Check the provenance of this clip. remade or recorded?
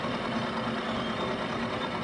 recorded